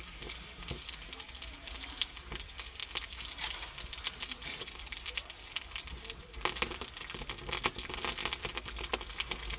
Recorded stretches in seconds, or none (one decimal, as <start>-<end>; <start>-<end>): 0.0-9.6